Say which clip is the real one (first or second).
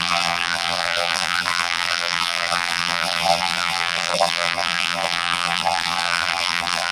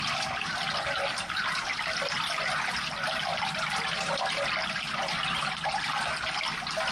second